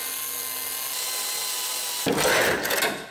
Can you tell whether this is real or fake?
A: real